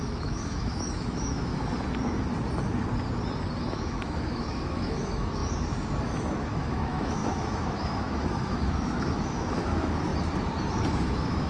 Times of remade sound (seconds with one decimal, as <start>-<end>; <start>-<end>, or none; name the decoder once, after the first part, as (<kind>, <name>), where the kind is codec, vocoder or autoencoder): 0.0-1.5 (autoencoder, DAC-VAE); 3.6-5.4; 6.0-10.1; 10.9-11.5